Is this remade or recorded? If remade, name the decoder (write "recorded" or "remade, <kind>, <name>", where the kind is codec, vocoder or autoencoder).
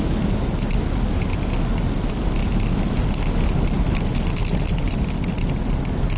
recorded